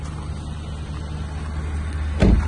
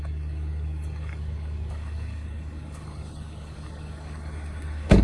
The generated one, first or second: second